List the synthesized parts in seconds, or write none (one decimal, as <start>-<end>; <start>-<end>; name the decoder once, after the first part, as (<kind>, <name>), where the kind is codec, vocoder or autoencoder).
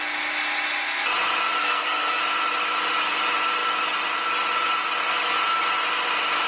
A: 1.6-2.2 (codec, SNAC)